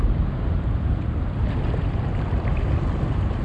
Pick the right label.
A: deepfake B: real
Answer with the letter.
B